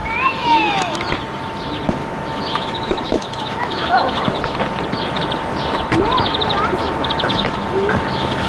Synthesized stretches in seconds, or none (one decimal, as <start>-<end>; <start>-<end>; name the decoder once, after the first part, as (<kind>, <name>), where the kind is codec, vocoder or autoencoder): 0.0-1.1 (autoencoder, DAC-VAE); 2.0-4.4; 6.8-8.5